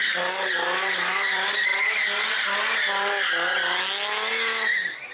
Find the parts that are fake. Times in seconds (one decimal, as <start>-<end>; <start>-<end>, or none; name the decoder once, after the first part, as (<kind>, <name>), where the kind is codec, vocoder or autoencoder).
none